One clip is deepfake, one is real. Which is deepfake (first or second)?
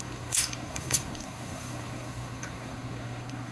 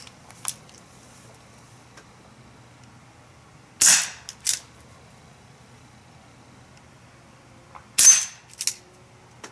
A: first